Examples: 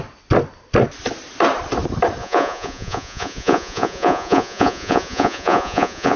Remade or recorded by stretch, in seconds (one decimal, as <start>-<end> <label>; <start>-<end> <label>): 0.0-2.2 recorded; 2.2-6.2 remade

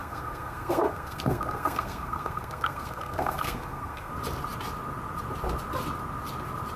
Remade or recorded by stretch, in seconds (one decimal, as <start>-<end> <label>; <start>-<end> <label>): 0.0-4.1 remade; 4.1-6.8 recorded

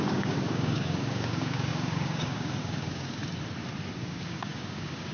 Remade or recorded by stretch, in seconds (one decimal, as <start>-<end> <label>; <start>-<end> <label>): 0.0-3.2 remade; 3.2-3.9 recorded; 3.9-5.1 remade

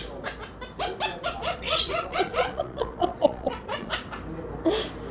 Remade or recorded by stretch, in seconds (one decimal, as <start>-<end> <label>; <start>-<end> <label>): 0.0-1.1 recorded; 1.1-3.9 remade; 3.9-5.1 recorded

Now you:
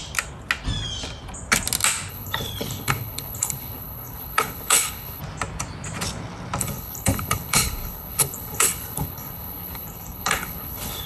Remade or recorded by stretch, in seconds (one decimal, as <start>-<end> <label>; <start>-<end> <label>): 0.0-2.1 recorded; 2.1-5.2 remade; 5.2-6.6 recorded; 6.6-11.1 remade

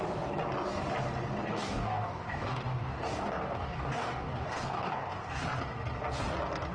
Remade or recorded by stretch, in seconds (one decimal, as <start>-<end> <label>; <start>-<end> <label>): 0.0-1.4 recorded; 1.4-5.4 remade; 5.4-6.7 recorded

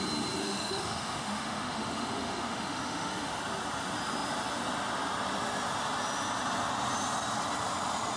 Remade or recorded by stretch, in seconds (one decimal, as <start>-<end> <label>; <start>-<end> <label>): 0.0-0.4 recorded; 0.4-3.4 remade; 3.4-8.2 recorded